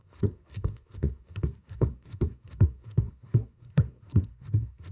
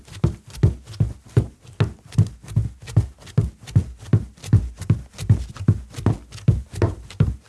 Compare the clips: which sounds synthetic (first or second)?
first